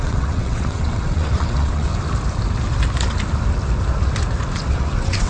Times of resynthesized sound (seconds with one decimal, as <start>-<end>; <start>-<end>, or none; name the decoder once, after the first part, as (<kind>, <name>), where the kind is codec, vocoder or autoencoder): 0.0-1.9 (vocoder, WaveNeXt); 4.7-5.3